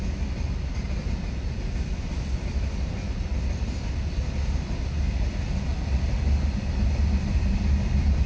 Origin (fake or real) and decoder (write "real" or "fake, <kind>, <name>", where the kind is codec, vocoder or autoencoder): real